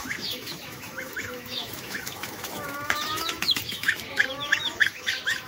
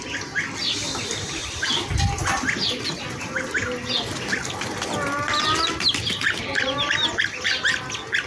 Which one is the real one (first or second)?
second